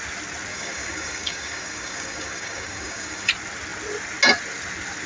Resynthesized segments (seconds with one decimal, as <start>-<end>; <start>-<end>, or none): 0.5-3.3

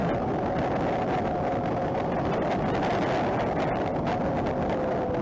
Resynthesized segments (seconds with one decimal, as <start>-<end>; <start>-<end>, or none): none

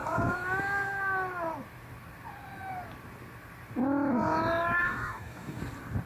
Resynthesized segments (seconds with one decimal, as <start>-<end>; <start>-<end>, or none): 4.8-5.6

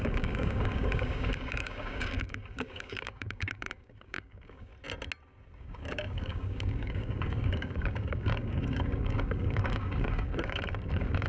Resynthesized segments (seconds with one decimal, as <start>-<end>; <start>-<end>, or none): 0.0-4.7; 5.6-11.3